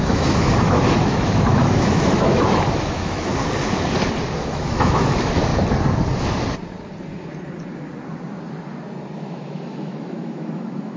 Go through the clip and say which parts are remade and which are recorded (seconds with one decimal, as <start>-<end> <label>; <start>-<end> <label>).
0.0-3.3 remade; 3.3-4.4 recorded; 4.4-5.5 remade; 5.5-9.2 recorded; 9.2-11.0 remade